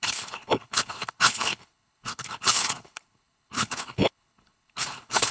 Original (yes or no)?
no